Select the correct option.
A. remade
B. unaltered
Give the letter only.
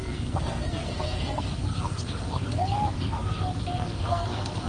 A